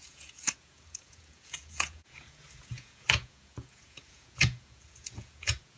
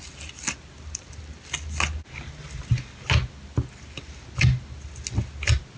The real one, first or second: second